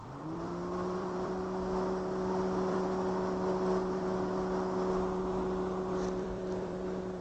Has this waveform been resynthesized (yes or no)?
yes